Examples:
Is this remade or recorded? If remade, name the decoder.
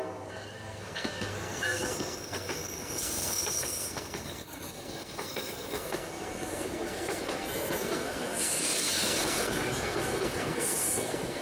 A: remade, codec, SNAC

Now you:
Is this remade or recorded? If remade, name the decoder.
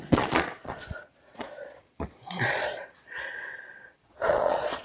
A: remade, vocoder, Vocos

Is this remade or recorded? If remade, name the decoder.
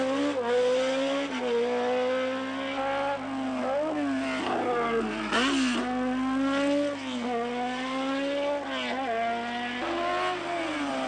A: recorded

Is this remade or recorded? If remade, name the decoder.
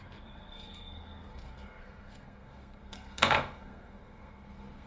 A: remade, codec, SNAC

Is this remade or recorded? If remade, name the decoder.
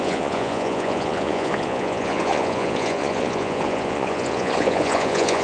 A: remade, vocoder, Vocos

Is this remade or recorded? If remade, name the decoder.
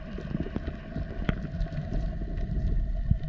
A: recorded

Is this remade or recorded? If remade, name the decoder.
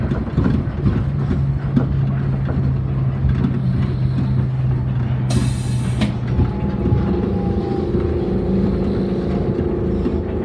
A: recorded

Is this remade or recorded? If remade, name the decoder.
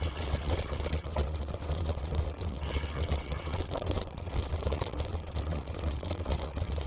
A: remade, vocoder, WaveNeXt